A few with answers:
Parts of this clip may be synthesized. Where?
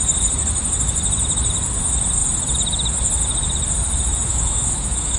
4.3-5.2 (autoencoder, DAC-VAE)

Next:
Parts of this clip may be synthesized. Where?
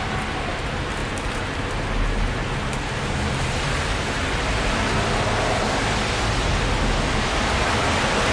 none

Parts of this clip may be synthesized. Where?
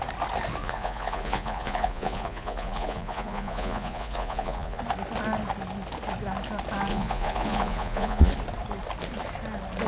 0.6-4.8 (vocoder, Vocos); 6.9-8.3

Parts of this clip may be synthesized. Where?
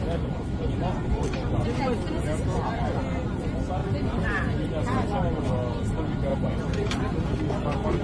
6.3-7.4 (vocoder, BigVGAN v2)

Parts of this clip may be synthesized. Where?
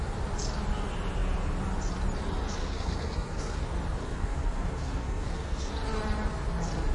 2.6-3.6 (codec, SNAC); 4.0-5.7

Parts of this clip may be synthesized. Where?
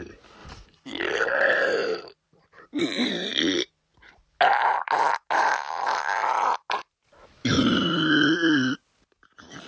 0.4-1.0 (vocoder, BigVGAN v2); 1.8-4.4